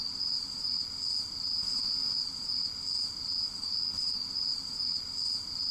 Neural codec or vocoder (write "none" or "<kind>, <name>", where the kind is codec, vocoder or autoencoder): none